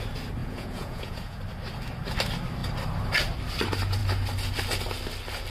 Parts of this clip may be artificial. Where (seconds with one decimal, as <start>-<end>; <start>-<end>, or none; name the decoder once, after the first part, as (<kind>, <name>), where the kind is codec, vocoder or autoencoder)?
0.4-1.4 (vocoder, Vocos)